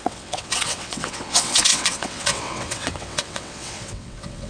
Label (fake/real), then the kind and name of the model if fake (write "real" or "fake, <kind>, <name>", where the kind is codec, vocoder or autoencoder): fake, vocoder, WaveNeXt